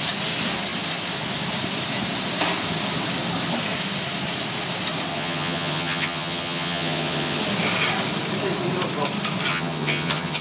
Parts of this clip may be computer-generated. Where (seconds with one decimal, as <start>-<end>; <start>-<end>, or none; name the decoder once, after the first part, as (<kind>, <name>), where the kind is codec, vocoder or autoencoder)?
5.1-7.4 (vocoder, HiFi-GAN); 9.5-10.4